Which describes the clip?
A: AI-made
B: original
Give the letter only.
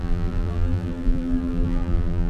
A